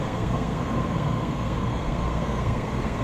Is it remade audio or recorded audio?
remade